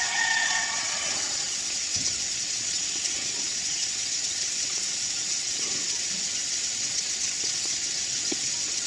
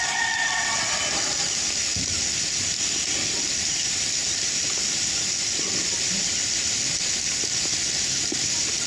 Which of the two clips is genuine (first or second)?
second